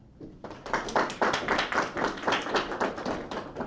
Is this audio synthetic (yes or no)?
no